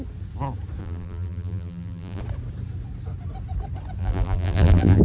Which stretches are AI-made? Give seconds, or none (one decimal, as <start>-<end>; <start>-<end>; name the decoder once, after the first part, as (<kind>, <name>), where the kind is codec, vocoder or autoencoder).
0.8-2.2 (vocoder, BigVGAN v2); 4.0-5.0